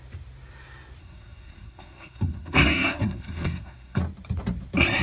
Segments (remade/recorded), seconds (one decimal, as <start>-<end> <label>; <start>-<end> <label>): 0.0-1.0 recorded; 1.0-4.0 remade; 4.0-5.0 recorded